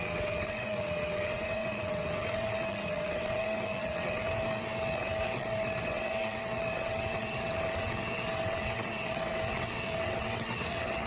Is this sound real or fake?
fake